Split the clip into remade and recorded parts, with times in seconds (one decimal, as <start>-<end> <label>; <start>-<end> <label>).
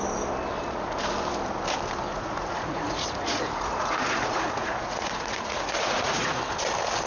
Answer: 0.0-2.1 recorded; 2.1-6.4 remade; 6.4-7.1 recorded